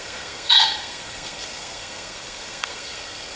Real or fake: fake